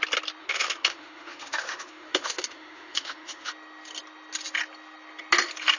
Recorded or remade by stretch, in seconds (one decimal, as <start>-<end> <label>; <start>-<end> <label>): 0.0-0.4 recorded; 0.4-3.5 remade; 3.5-5.8 recorded